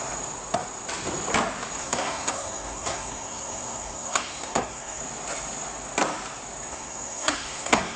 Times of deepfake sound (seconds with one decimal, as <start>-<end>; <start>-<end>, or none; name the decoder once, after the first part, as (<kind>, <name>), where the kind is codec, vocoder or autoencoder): 1.8-5.0 (codec, SNAC); 6.7-8.0